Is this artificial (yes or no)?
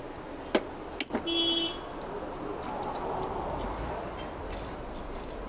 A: no